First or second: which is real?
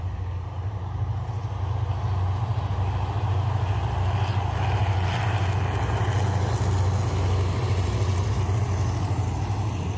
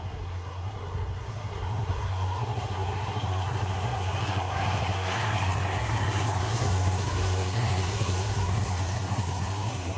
first